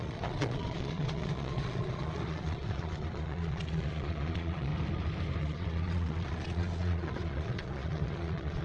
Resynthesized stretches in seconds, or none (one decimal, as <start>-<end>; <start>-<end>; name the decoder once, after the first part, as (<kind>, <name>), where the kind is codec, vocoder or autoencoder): 0.0-4.7 (vocoder, Vocos); 5.4-8.6